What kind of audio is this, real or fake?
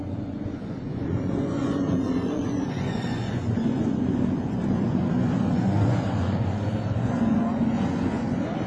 fake